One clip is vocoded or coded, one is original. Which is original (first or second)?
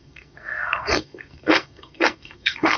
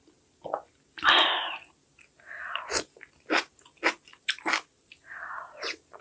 second